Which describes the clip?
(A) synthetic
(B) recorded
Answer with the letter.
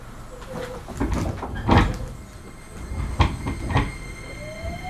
B